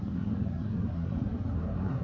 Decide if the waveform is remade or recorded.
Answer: remade